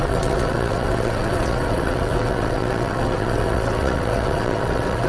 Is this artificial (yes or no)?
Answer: yes